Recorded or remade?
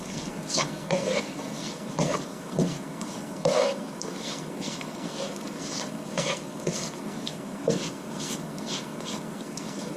remade